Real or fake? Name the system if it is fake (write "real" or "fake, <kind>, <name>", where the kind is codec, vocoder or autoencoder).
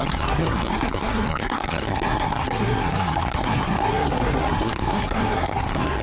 fake, codec, SNAC